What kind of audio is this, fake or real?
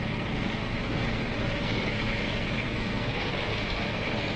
fake